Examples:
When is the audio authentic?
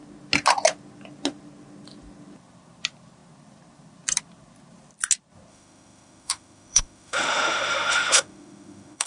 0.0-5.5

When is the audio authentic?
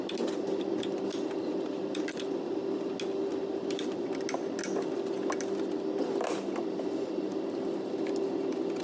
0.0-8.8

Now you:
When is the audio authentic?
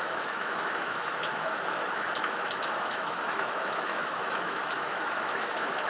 none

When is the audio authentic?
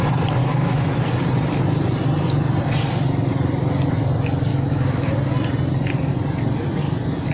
0.0-0.4; 1.0-4.5; 5.1-7.3